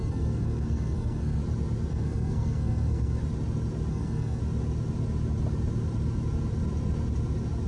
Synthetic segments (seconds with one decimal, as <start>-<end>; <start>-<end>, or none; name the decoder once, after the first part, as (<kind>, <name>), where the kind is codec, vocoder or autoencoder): 0.0-1.4 (codec, SNAC); 1.9-3.2; 3.9-4.4